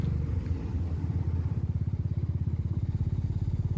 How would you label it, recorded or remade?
recorded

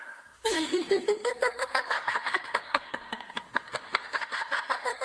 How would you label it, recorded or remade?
remade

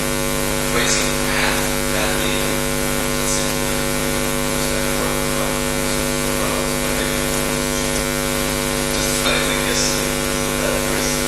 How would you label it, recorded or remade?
recorded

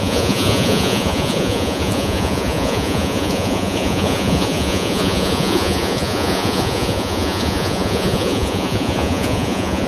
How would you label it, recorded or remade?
remade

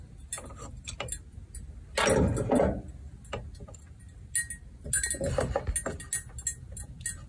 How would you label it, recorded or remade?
recorded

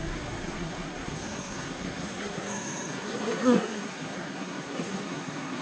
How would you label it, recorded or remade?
remade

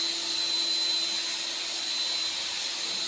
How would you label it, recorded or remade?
recorded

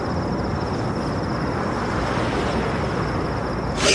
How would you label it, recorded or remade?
recorded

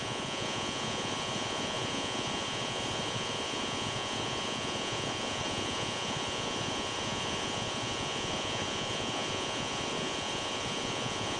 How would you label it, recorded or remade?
remade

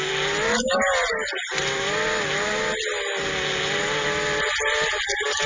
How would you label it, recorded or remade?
recorded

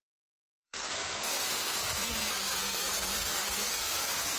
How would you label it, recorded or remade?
remade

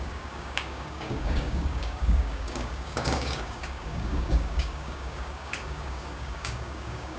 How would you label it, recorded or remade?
remade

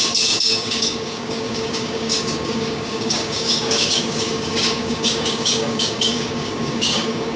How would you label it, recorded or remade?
remade